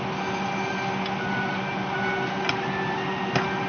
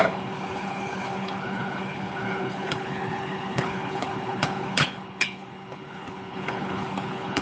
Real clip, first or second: first